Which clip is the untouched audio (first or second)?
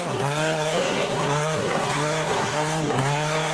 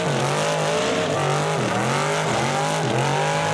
second